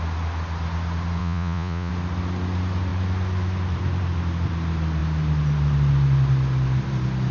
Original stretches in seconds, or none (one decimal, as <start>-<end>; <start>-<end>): 0.0-1.2; 1.9-7.3